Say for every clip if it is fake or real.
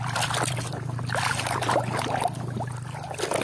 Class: real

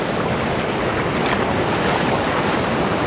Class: real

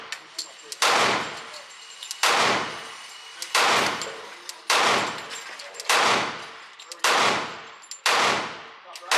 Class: real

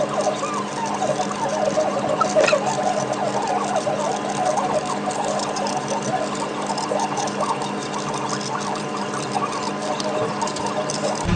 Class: fake